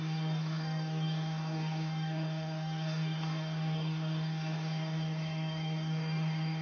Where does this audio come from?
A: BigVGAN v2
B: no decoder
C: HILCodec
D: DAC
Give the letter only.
D